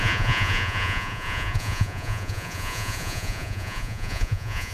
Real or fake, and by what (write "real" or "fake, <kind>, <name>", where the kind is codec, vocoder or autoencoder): fake, vocoder, Vocos